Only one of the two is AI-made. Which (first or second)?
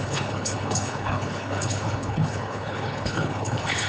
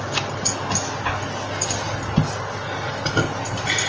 first